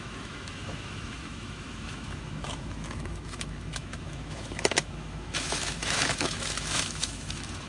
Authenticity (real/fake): fake